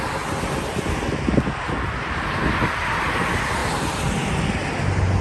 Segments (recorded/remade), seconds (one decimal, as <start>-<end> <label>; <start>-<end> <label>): 0.0-5.2 recorded